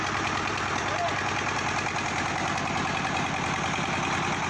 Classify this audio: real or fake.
real